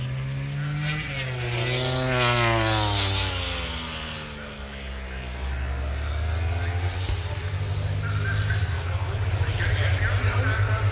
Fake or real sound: real